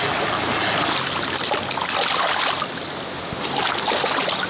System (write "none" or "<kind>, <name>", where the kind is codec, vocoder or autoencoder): none